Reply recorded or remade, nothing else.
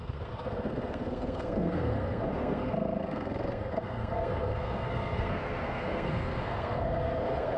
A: remade